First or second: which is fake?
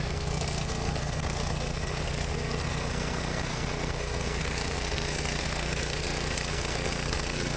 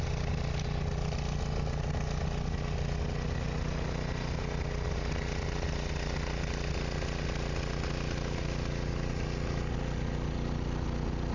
first